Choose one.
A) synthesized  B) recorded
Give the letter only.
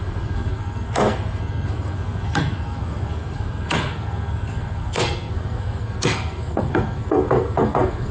A